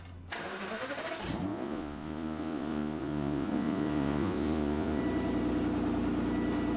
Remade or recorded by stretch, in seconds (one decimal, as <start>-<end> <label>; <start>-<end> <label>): 0.0-1.5 recorded; 1.5-5.0 remade; 5.0-6.8 recorded

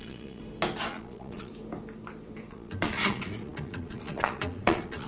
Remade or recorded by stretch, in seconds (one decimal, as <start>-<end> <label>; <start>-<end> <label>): 0.0-0.4 remade; 0.4-0.9 recorded; 0.9-1.5 remade; 1.5-2.5 recorded; 2.5-5.1 remade